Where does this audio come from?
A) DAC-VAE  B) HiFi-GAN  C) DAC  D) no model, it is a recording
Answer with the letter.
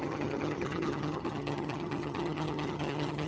B